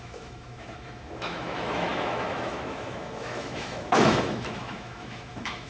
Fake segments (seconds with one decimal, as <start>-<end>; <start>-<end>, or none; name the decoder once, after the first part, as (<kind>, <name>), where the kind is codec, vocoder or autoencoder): 0.0-5.7 (autoencoder, DAC-VAE)